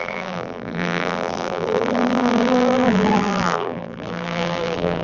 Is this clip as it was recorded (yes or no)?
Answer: no